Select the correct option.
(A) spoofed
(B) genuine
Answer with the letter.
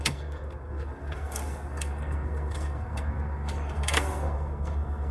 A